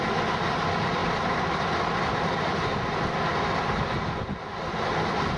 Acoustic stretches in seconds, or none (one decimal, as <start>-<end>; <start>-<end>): 0.0-5.4